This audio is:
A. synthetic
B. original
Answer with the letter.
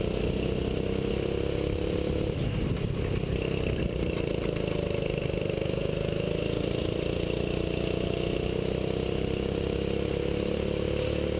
B